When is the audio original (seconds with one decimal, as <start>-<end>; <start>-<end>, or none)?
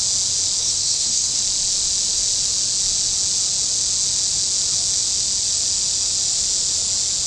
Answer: 0.0-0.6; 1.4-7.3